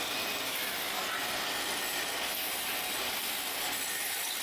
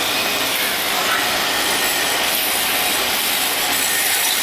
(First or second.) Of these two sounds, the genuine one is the first